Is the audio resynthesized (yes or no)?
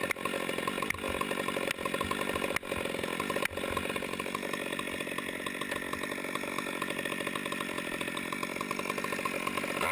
no